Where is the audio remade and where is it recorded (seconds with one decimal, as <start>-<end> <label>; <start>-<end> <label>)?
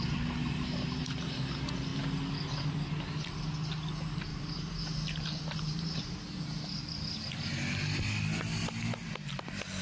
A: 0.0-4.3 recorded; 4.3-6.0 remade; 6.0-9.8 recorded